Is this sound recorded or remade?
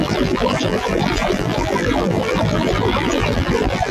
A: remade